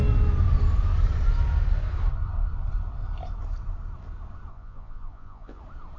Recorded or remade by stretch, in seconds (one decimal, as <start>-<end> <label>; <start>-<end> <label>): 0.0-4.5 recorded; 4.5-5.6 remade; 5.6-6.0 recorded